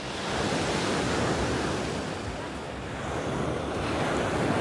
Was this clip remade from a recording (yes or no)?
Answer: no